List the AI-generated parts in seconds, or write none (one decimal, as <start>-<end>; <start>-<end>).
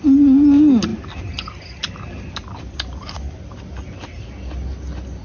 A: none